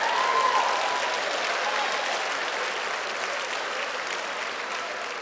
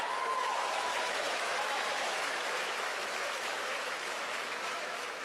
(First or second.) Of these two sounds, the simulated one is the second